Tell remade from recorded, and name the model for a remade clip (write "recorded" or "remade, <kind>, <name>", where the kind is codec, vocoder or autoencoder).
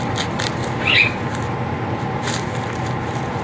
recorded